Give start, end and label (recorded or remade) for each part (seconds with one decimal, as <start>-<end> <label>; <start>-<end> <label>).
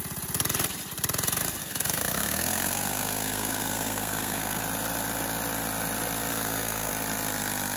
0.0-1.6 recorded; 1.6-4.6 remade; 4.6-6.3 recorded; 6.3-6.9 remade; 6.9-7.8 recorded